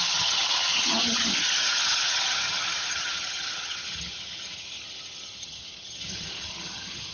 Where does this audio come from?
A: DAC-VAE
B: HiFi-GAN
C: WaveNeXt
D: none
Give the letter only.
B